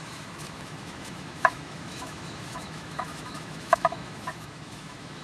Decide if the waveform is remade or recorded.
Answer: remade